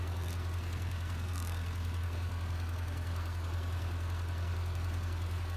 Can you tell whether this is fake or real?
fake